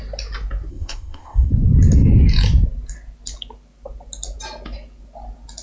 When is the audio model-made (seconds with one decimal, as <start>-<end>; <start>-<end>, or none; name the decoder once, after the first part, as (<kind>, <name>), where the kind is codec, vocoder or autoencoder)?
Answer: 0.7-1.5 (codec, ZipCodec)